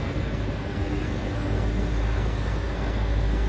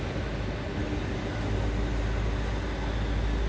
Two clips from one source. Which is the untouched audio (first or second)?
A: second